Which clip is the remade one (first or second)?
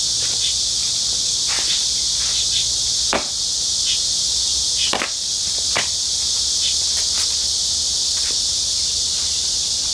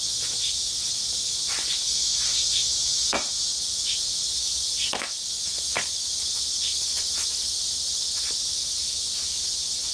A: second